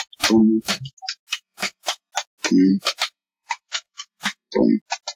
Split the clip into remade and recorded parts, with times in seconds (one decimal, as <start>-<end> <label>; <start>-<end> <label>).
0.0-0.4 recorded; 0.4-0.9 remade; 0.9-1.3 recorded; 1.3-2.1 remade; 2.1-2.7 recorded; 2.7-4.5 remade; 4.5-5.2 recorded